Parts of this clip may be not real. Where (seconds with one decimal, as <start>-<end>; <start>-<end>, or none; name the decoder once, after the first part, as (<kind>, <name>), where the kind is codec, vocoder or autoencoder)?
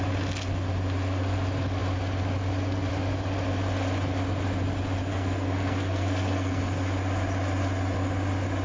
5.1-6.6 (codec, SNAC)